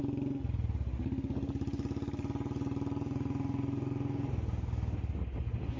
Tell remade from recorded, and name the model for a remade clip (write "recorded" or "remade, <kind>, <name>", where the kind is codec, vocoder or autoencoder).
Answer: recorded